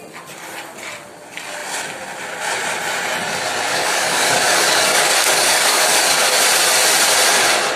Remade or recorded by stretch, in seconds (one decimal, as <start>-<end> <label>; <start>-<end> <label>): 0.0-3.7 recorded; 3.7-6.4 remade; 6.4-7.8 recorded